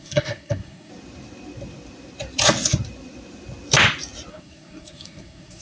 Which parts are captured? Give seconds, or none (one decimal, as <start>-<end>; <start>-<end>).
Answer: 0.9-4.3